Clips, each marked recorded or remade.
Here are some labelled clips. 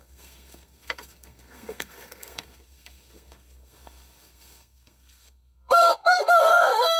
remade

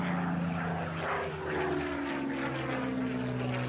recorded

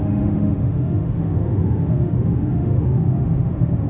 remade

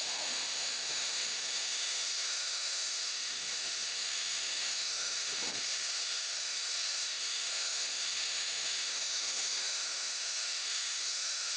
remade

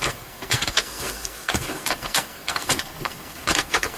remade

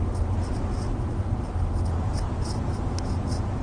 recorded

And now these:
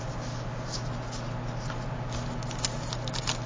recorded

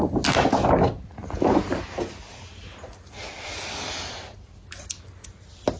recorded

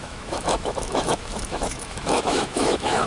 remade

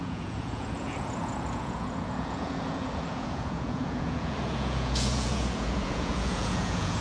remade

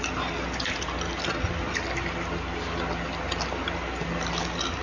recorded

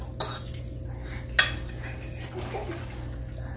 recorded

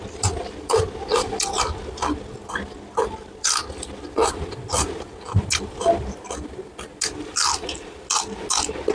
recorded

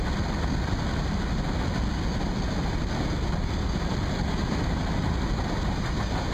recorded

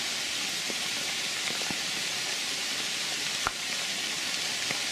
recorded